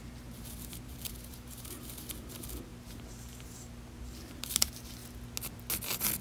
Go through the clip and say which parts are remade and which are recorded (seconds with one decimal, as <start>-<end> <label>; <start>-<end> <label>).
0.0-5.0 remade; 5.0-6.2 recorded